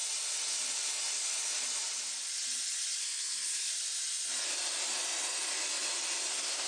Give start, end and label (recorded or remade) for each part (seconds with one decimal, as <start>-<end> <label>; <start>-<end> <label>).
0.0-3.0 recorded; 3.0-3.7 remade; 3.7-6.3 recorded; 6.3-6.7 remade